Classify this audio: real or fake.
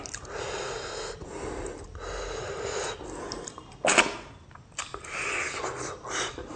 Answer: real